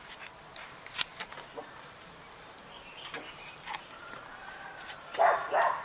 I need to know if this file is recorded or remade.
remade